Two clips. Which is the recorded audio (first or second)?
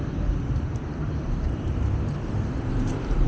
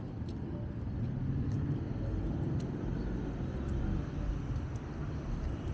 second